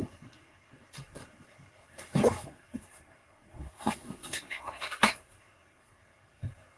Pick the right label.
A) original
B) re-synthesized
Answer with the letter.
B